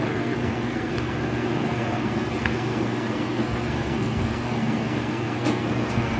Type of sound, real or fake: fake